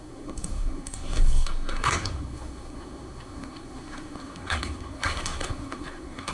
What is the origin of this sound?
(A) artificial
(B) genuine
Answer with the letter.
A